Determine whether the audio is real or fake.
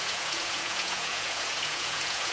fake